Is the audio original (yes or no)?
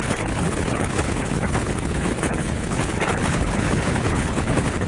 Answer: no